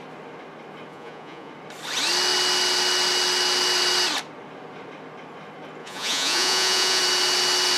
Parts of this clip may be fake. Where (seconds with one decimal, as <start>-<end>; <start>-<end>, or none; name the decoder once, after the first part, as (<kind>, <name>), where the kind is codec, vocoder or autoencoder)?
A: 0.9-1.5 (vocoder, Vocos); 5.8-7.0